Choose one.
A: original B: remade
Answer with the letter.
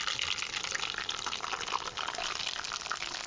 A